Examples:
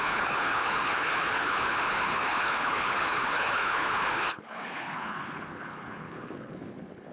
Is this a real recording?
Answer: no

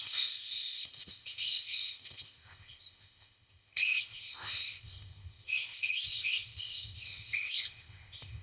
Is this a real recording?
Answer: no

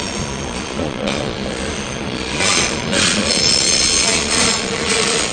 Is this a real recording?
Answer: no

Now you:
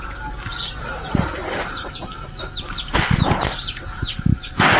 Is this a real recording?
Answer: yes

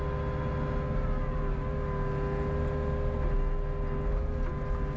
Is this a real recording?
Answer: yes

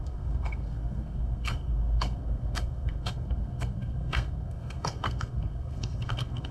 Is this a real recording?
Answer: no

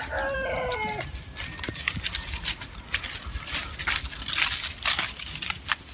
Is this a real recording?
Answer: yes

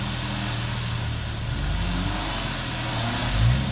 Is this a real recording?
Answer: yes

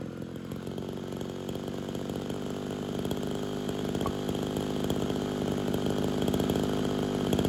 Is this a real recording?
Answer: yes